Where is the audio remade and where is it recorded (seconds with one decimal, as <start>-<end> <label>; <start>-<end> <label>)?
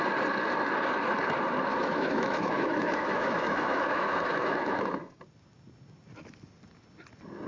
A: 0.0-1.7 recorded; 1.7-5.2 remade; 5.2-7.5 recorded